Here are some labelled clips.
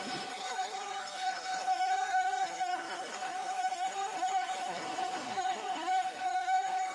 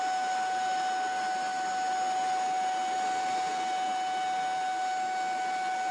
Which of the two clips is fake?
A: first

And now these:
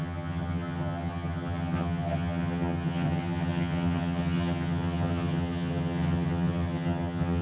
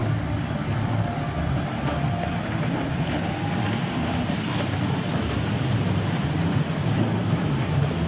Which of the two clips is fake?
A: first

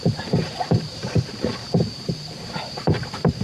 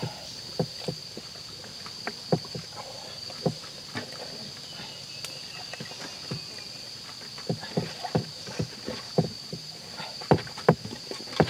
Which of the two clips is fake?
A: first